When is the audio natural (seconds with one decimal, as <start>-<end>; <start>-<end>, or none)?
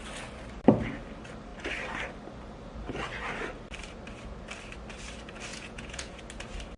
0.0-5.5; 6.1-6.8